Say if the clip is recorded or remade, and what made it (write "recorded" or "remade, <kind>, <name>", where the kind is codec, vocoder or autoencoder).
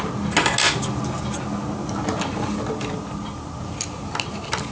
recorded